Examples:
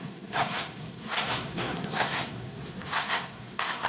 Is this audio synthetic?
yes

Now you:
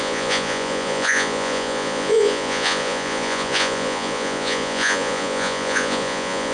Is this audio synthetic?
yes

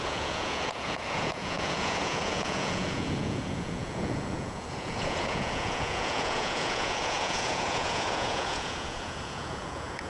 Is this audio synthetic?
yes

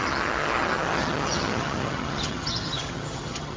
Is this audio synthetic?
yes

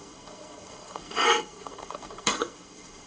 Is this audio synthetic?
yes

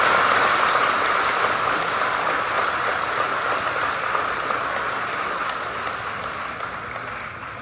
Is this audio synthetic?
no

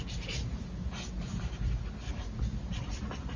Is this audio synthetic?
no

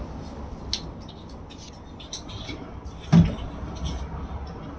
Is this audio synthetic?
no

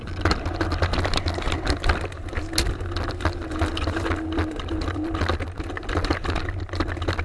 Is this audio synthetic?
no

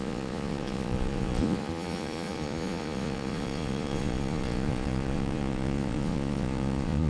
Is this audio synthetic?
yes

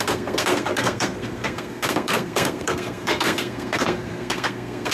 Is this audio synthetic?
yes